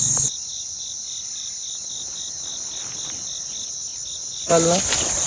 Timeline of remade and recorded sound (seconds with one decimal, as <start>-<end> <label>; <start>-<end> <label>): 0.0-5.3 recorded